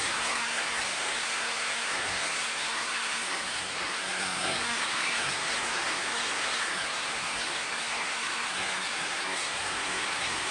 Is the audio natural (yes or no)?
no